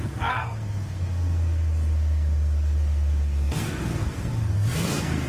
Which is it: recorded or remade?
remade